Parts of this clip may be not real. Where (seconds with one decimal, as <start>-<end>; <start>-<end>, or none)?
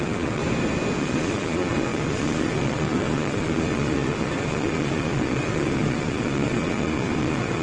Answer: 0.0-0.4; 1.0-7.6